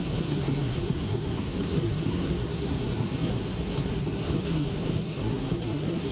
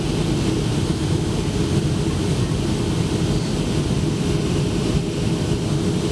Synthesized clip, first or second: first